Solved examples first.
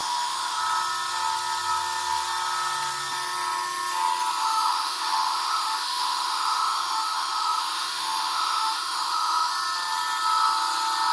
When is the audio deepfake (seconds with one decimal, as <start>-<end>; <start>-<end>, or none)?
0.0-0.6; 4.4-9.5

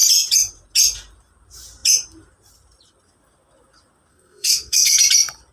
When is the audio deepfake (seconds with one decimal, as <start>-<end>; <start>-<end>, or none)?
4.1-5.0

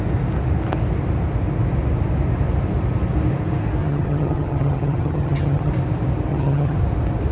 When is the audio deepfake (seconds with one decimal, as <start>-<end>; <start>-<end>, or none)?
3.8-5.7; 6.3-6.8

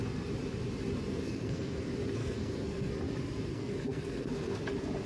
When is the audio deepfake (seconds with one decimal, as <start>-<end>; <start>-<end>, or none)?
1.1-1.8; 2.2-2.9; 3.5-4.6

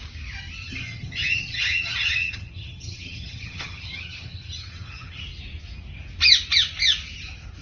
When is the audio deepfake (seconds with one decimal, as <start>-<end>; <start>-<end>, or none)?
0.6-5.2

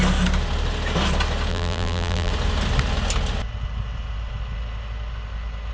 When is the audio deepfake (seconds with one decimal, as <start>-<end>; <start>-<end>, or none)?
1.5-2.3